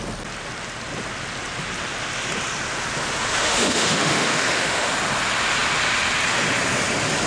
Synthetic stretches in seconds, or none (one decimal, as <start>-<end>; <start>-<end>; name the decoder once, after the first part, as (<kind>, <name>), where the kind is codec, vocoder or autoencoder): 3.3-4.9 (autoencoder, DAC-VAE)